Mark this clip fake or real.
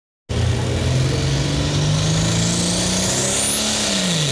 real